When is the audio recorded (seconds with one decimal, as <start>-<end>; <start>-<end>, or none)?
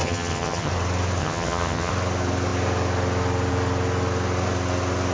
0.7-1.2; 1.9-5.1